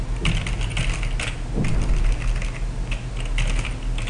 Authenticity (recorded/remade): recorded